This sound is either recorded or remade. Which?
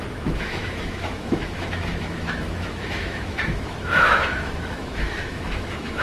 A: remade